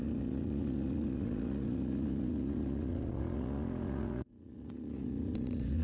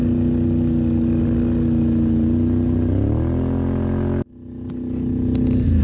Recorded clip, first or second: second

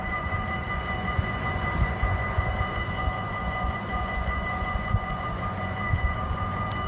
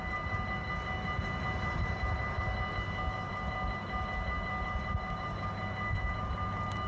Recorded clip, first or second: second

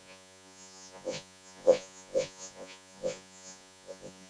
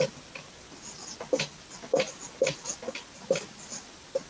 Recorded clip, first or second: second